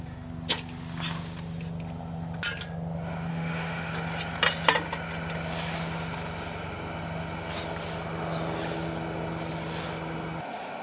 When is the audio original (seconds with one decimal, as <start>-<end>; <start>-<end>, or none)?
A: 0.0-3.3; 3.9-10.8